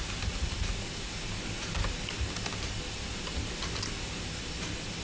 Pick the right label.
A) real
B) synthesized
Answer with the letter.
A